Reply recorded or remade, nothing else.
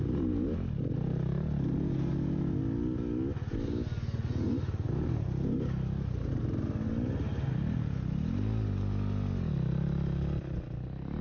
recorded